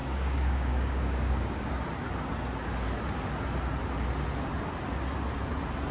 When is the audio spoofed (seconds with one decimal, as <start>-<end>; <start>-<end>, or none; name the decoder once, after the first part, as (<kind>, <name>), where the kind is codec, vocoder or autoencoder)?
0.0-1.7 (codec, DAC)